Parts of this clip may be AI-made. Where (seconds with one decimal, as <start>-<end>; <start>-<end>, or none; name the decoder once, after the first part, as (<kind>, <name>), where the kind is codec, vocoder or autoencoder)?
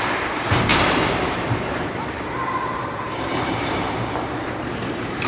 0.0-5.3 (vocoder, BigVGAN v2)